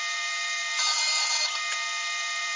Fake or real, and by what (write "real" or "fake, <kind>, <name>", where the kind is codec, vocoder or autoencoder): fake, vocoder, BigVGAN v2